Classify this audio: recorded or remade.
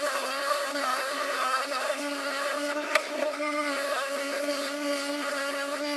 remade